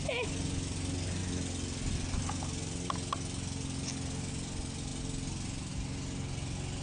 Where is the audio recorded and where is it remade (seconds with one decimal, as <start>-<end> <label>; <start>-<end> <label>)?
0.0-6.8 recorded